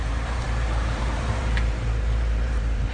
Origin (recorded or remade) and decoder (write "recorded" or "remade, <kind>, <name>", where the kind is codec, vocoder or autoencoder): remade, vocoder, BigVGAN v2